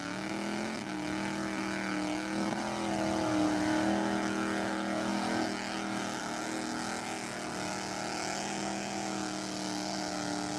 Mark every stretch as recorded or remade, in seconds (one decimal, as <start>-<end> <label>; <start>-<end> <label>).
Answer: 0.0-10.6 recorded